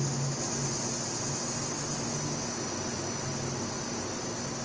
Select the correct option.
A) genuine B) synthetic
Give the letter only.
A